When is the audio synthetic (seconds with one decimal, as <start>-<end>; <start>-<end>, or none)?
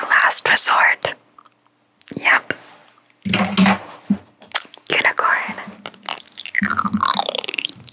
none